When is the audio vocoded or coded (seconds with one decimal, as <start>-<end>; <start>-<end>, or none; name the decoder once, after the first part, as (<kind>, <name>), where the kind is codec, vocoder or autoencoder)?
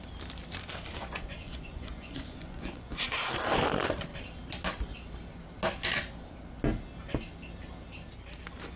0.9-3.3 (vocoder, Vocos)